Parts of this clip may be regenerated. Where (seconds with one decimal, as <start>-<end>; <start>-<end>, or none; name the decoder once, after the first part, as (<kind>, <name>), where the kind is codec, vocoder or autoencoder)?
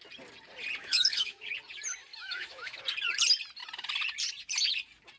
0.8-1.5 (autoencoder, DAC-VAE); 2.1-2.8